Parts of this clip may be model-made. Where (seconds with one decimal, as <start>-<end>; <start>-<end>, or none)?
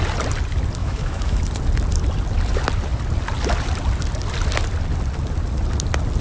0.8-1.4